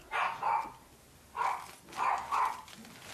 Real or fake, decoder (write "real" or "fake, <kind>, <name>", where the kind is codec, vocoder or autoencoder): real